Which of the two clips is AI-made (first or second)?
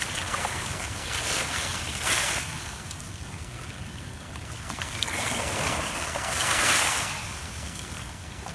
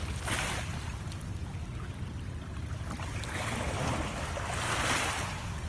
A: first